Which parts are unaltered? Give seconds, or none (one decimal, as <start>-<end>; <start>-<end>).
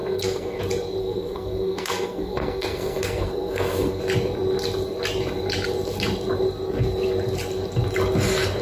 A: 0.6-1.0; 4.0-8.6